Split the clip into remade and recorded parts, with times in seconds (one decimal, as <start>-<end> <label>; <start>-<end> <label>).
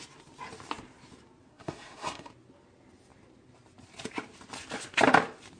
0.0-1.5 recorded; 1.5-2.3 remade; 2.3-5.6 recorded